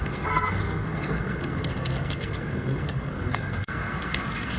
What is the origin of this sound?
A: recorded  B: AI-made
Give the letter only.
B